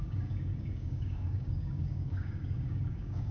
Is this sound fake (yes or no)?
yes